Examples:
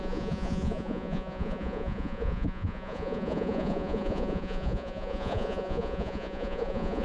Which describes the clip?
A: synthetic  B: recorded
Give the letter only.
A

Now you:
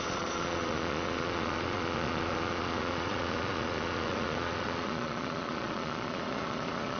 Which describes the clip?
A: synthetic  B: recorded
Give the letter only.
A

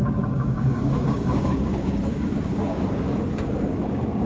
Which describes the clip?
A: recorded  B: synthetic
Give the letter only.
B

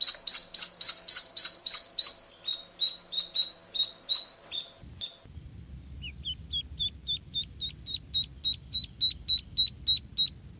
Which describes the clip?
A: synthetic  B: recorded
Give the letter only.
B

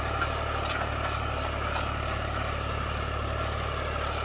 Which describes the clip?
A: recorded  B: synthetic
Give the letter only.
A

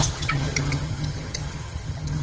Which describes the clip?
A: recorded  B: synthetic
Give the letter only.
B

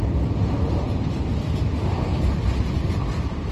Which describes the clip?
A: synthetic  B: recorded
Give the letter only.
A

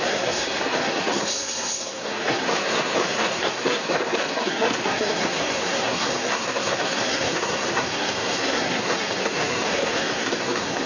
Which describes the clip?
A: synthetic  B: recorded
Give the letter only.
A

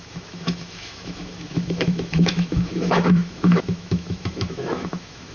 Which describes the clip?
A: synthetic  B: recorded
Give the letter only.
A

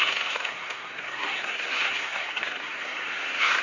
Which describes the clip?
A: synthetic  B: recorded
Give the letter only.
A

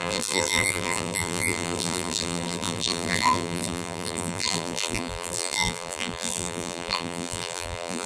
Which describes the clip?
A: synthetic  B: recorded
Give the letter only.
A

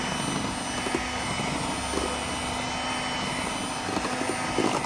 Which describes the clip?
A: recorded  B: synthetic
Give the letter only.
A